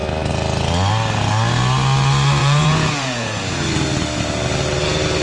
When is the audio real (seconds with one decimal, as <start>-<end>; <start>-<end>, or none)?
0.0-2.4; 3.4-5.2